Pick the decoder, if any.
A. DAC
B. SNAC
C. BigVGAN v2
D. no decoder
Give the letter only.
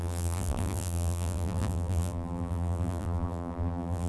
C